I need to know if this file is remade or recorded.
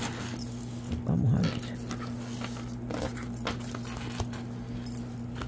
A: recorded